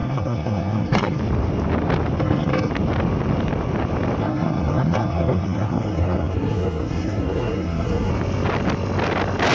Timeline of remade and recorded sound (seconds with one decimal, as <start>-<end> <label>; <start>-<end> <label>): 0.0-1.2 remade; 1.2-2.2 recorded; 2.2-2.7 remade; 2.7-4.2 recorded; 4.2-8.1 remade; 8.1-9.5 recorded